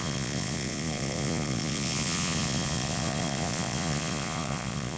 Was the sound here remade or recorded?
remade